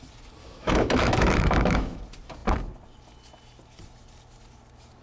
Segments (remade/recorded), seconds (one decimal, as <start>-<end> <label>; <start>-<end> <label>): 0.0-0.4 recorded; 0.4-2.0 remade; 2.0-5.0 recorded